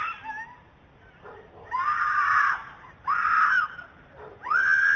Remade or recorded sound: recorded